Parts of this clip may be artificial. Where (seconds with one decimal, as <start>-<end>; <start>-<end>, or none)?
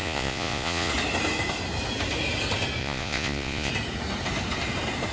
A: 0.0-0.9; 2.8-3.7